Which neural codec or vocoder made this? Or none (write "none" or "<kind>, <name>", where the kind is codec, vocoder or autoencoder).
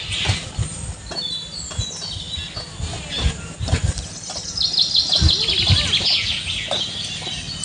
none